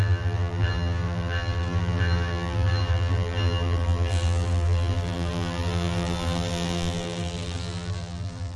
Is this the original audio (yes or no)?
no